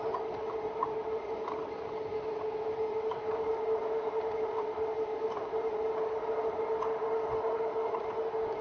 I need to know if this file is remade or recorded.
recorded